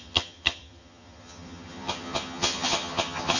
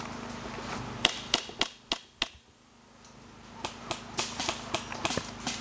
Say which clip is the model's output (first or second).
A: first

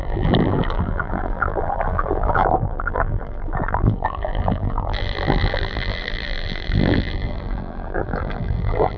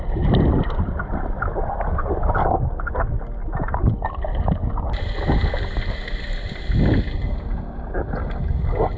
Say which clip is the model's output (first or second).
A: first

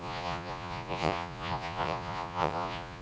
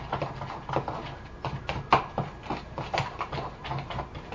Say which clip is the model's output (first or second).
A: first